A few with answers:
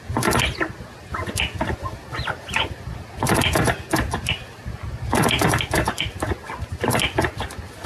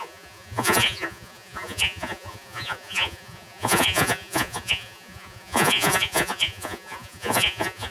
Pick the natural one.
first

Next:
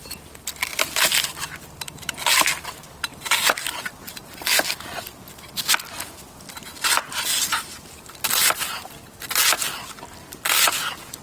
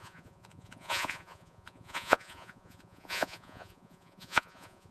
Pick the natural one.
first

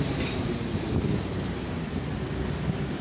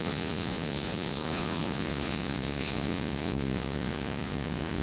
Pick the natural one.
first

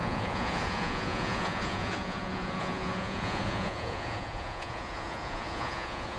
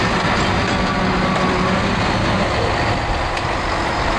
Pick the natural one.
second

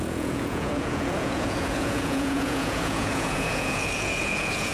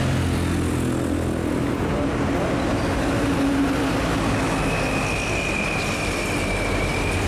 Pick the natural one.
second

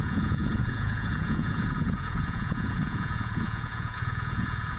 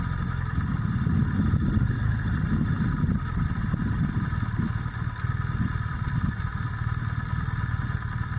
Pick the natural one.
second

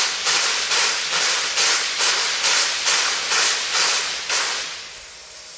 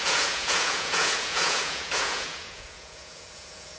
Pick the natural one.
first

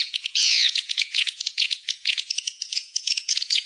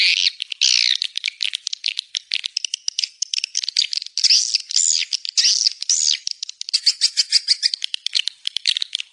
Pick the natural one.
second